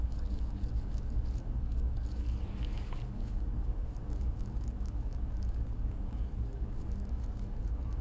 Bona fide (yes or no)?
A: no